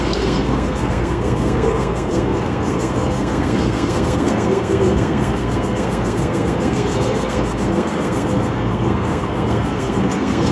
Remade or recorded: remade